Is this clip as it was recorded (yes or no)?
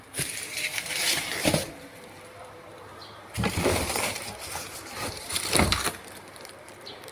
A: no